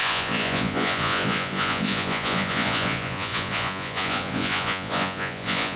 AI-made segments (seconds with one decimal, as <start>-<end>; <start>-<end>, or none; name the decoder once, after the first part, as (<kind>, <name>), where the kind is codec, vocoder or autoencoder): 0.0-5.8 (vocoder, Vocos)